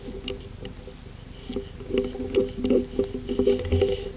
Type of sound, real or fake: real